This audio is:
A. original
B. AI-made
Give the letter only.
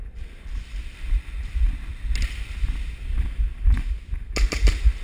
A